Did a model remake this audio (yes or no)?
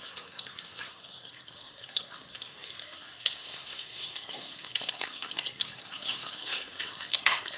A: yes